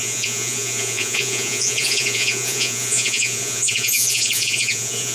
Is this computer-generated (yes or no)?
yes